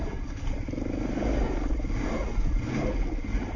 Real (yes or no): yes